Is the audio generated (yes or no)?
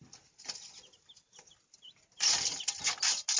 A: no